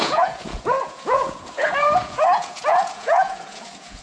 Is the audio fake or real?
fake